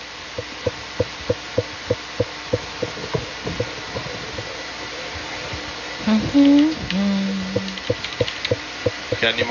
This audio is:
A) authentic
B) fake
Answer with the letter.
A